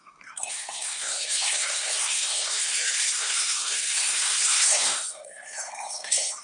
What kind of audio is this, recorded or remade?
remade